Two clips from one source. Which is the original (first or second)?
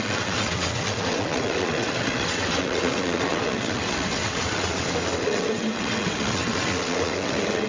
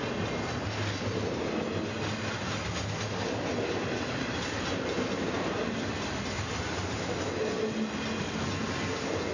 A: second